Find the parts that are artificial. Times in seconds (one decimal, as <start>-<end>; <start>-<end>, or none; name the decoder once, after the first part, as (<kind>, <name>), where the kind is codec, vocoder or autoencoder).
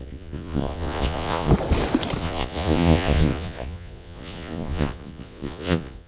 0.0-1.5 (vocoder, Vocos); 2.2-6.1